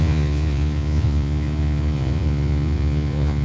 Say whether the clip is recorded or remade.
remade